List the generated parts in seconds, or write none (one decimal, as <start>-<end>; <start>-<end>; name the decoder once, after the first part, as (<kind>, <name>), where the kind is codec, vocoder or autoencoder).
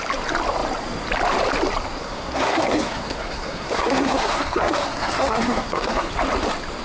2.0-6.1 (codec, SNAC)